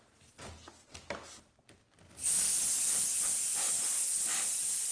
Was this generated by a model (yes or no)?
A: no